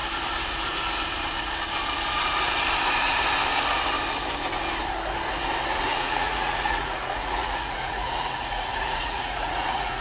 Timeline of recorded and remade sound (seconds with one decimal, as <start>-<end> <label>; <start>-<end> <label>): 0.0-5.9 recorded; 5.9-10.0 remade